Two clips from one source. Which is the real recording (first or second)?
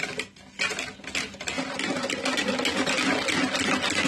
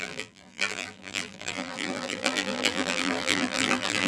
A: first